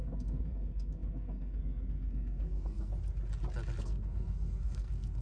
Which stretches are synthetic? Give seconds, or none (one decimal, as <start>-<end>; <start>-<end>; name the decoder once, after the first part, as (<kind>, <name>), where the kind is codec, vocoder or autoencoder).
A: 0.0-2.9 (codec, SNAC); 3.8-5.2